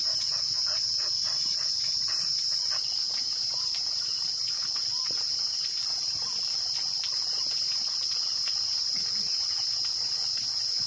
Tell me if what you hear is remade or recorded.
remade